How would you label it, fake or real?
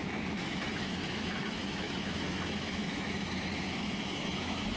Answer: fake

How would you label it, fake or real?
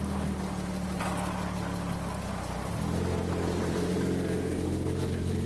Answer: real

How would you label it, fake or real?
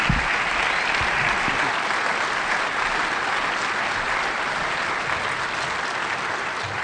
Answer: real